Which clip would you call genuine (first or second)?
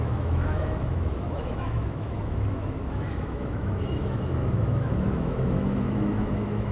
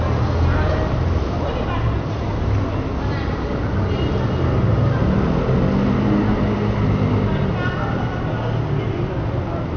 second